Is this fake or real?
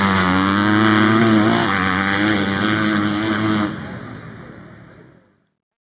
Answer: real